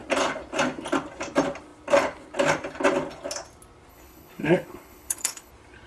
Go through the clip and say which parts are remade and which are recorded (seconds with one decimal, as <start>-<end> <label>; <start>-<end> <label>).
0.0-3.9 recorded; 3.9-5.5 remade; 5.5-5.9 recorded